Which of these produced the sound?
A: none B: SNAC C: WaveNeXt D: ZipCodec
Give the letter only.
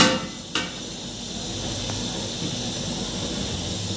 A